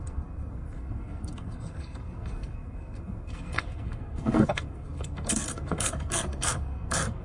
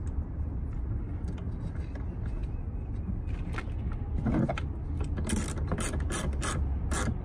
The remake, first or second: first